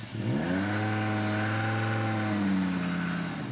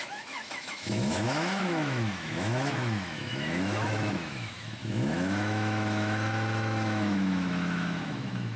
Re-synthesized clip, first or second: second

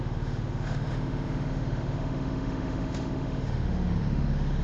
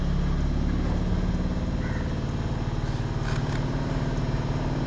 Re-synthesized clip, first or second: first